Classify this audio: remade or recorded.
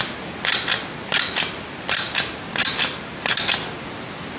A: recorded